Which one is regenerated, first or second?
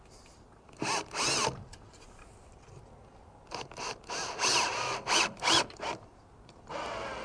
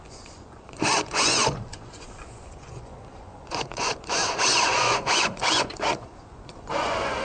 second